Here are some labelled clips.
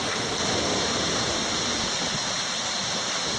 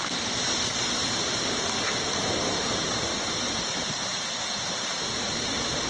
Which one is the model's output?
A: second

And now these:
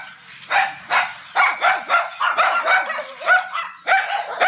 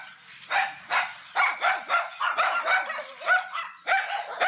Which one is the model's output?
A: second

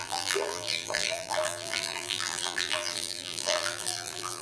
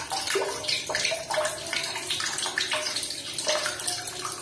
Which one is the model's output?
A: first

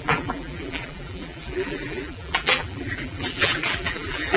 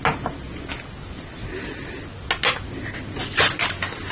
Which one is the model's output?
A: first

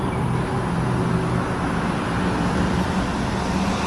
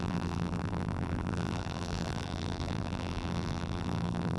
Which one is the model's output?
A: second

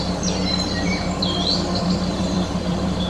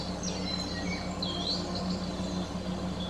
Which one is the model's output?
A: first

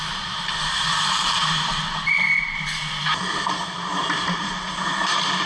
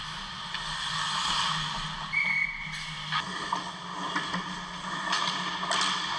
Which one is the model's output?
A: first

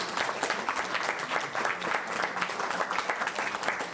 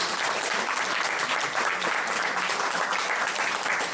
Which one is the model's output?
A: second